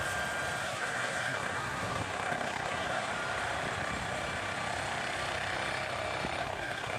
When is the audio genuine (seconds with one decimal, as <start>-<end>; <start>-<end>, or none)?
0.0-0.6; 3.1-6.4